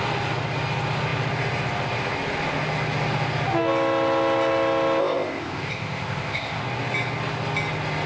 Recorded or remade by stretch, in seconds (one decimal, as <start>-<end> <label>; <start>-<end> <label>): 0.0-5.0 recorded; 5.0-6.6 remade; 6.6-8.1 recorded